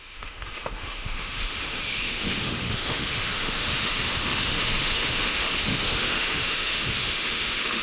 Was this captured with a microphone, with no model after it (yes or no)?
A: no